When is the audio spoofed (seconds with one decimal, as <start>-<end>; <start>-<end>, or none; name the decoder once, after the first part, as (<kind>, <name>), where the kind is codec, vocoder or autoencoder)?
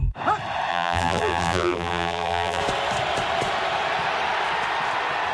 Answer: 0.7-2.6 (vocoder, BigVGAN v2)